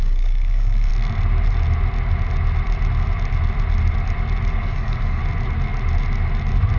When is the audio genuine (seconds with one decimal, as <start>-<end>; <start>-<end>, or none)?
0.9-4.5; 5.2-6.8